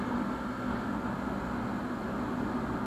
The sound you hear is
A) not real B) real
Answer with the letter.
B